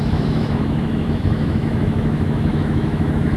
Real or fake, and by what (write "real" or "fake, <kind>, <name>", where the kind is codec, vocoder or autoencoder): fake, autoencoder, DAC-VAE